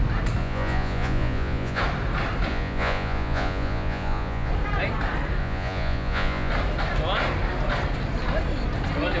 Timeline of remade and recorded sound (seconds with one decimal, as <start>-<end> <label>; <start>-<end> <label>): 0.0-0.4 recorded; 0.4-1.8 remade; 1.8-2.5 recorded; 2.5-4.5 remade; 4.5-5.4 recorded; 5.4-6.5 remade; 6.5-9.2 recorded